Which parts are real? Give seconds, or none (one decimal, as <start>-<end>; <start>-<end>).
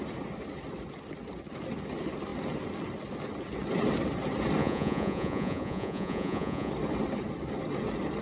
0.0-4.6; 6.7-8.2